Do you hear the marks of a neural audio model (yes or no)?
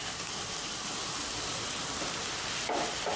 yes